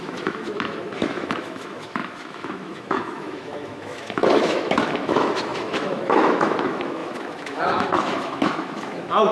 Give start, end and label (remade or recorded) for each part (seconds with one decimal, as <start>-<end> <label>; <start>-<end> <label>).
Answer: 0.0-9.3 remade